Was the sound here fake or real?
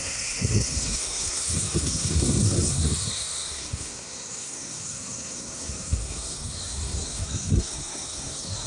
fake